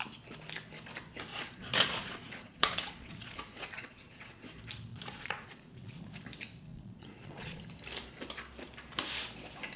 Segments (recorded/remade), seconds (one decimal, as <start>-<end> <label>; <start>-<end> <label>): 0.0-1.3 recorded; 1.3-4.4 remade; 4.4-4.9 recorded; 4.9-6.0 remade; 6.0-6.7 recorded; 6.7-7.6 remade; 7.6-9.8 recorded

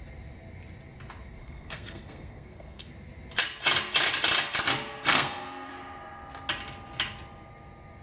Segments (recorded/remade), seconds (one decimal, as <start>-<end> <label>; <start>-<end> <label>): 0.0-1.4 recorded; 1.4-2.9 remade; 2.9-5.1 recorded; 5.1-5.7 remade; 5.7-8.0 recorded

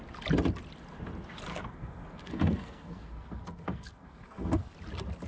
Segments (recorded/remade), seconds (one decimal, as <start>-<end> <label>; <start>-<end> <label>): 0.0-1.5 recorded; 1.5-4.7 remade; 4.7-5.3 recorded

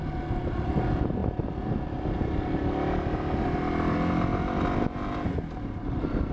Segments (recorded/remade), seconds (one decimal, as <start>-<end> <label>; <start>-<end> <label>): 0.0-6.3 recorded

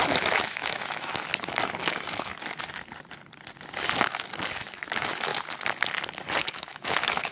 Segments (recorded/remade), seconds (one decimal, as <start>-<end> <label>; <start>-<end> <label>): 0.0-1.3 remade; 1.3-1.8 recorded; 1.8-2.3 remade; 2.3-4.1 recorded; 4.1-5.3 remade; 5.3-6.4 recorded; 6.4-7.3 remade

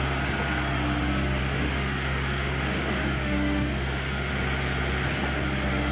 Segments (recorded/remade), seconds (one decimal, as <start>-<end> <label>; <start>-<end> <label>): 0.0-1.4 recorded; 1.4-4.3 remade; 4.3-5.9 recorded

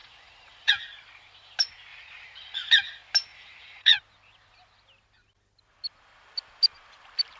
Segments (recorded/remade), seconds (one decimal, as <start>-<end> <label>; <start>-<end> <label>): 0.0-0.7 remade; 0.7-1.9 recorded; 1.9-2.7 remade; 2.7-3.3 recorded; 3.3-4.0 remade; 4.0-7.4 recorded